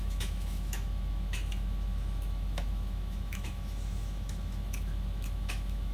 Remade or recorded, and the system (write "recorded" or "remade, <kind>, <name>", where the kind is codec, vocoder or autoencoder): remade, autoencoder, DAC-VAE